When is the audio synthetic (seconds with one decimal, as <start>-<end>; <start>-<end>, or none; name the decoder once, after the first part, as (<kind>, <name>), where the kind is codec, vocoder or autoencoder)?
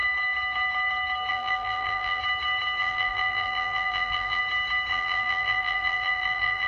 1.3-2.2 (vocoder, BigVGAN v2); 2.8-4.4; 4.9-6.7